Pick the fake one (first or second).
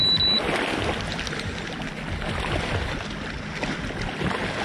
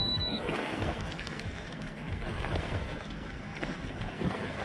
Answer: second